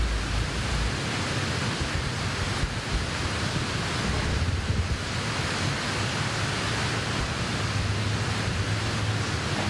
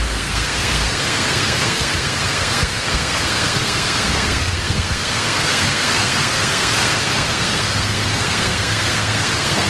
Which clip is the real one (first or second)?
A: first